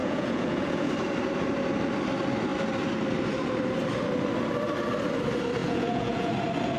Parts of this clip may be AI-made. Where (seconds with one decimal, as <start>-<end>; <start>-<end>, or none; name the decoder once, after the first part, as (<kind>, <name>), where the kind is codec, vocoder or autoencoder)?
0.0-0.9 (vocoder, Vocos); 5.6-6.3